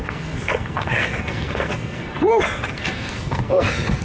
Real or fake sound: fake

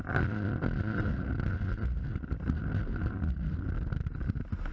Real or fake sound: real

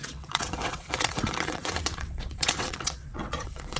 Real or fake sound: fake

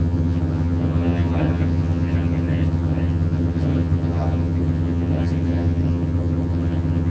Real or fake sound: fake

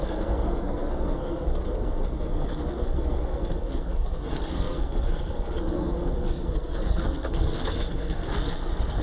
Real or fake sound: fake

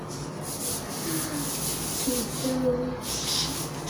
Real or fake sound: real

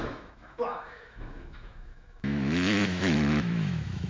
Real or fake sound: fake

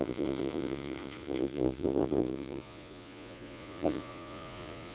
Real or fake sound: fake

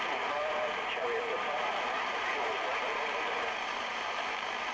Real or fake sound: fake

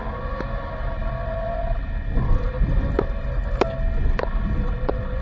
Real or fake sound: real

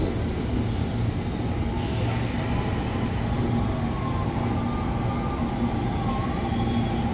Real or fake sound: real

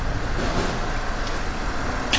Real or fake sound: real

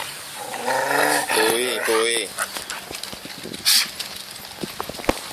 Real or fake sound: real